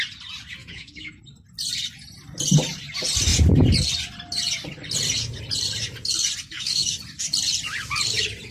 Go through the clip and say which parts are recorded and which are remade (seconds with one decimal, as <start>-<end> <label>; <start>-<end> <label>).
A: 0.0-0.6 recorded; 0.6-1.2 remade; 1.2-6.5 recorded; 6.5-7.0 remade; 7.0-8.5 recorded